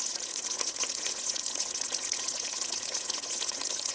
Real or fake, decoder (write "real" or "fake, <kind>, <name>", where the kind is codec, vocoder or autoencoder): fake, vocoder, Vocos